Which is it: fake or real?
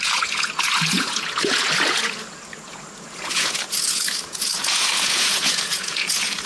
fake